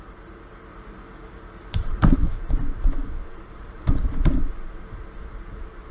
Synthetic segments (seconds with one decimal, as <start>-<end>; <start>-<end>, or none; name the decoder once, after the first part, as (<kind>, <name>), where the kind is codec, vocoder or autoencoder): 0.7-2.2 (vocoder, BigVGAN v2); 3.0-4.3